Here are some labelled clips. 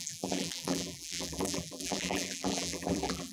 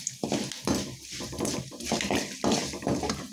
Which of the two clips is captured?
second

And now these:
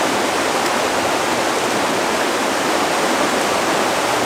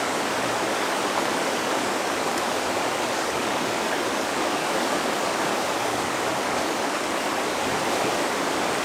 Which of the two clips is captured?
first